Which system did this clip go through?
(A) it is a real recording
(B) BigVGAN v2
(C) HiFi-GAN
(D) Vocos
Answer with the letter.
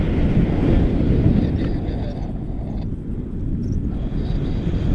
B